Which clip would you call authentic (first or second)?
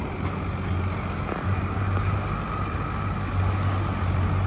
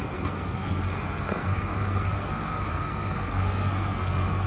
first